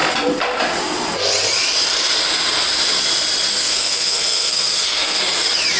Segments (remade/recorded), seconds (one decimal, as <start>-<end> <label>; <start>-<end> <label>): 0.0-3.5 recorded; 3.5-5.2 remade; 5.2-5.8 recorded